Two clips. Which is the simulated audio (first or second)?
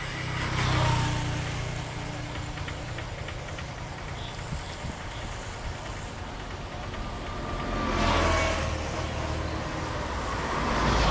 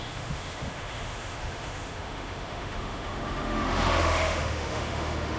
second